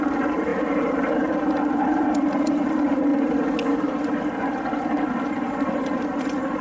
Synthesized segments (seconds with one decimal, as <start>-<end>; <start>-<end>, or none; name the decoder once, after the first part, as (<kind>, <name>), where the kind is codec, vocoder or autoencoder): 0.0-3.1 (vocoder, BigVGAN v2); 3.8-6.6